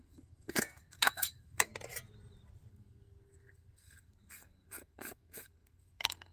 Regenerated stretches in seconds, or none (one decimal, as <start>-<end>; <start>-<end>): 0.0-1.7; 2.7-6.3